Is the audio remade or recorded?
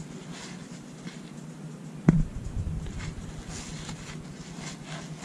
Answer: recorded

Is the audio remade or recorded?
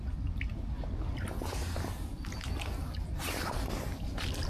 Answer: recorded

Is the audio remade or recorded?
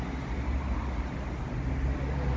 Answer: recorded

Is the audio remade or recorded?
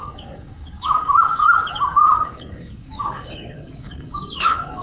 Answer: remade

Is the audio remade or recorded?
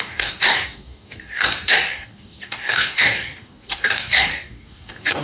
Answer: remade